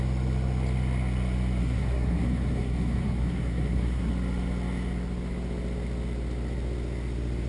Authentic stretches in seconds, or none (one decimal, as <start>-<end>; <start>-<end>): 0.0-1.6; 4.1-7.5

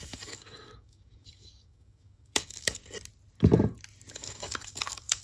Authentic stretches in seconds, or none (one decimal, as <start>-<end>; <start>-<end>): 2.8-4.1

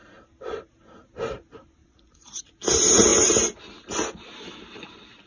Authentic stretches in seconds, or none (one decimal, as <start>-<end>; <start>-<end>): 0.0-1.8; 2.4-5.3

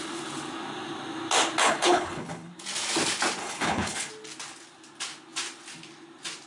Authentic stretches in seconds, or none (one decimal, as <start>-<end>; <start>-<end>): 0.0-1.6; 2.5-3.4; 4.1-6.5

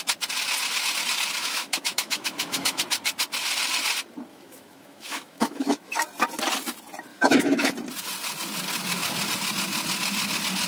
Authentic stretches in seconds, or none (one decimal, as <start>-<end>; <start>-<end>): 0.0-1.4; 2.8-4.3; 5.9-7.1; 7.7-10.7

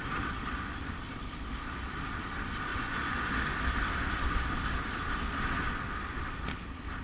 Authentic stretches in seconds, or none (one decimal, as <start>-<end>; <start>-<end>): 0.0-2.7; 3.3-7.0

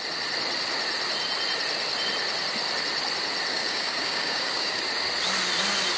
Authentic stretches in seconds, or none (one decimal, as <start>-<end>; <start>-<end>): 0.0-3.5; 4.8-6.0